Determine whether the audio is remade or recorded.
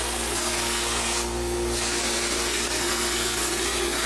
remade